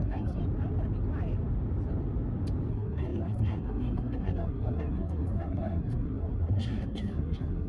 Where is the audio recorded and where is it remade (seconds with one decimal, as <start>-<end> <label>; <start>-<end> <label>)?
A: 0.0-0.4 remade; 0.4-2.7 recorded; 2.7-7.7 remade